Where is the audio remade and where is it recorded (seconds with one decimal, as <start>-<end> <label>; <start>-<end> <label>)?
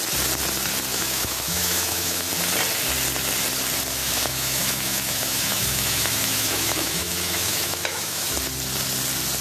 0.0-0.9 recorded; 0.9-2.3 remade; 2.3-4.0 recorded; 4.0-8.3 remade; 8.3-9.4 recorded